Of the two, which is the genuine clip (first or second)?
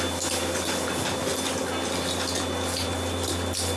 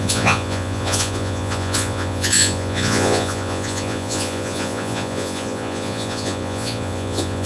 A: first